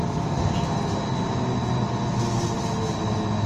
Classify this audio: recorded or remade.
recorded